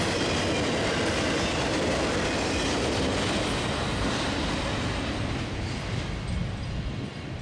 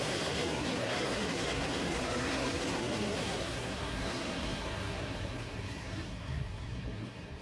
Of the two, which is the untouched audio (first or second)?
first